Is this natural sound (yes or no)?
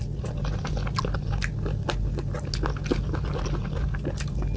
yes